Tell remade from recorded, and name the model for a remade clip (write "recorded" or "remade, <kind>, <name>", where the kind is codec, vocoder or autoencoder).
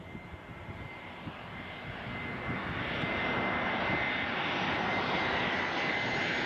recorded